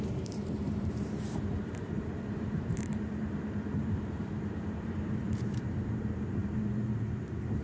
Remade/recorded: remade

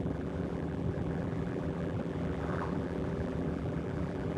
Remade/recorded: remade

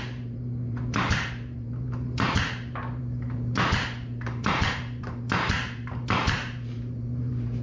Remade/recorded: remade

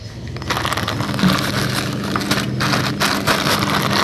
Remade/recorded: recorded